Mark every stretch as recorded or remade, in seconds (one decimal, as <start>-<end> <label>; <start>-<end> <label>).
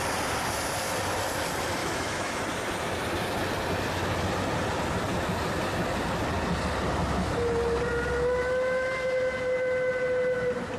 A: 0.0-1.8 recorded; 1.8-2.4 remade; 2.4-10.8 recorded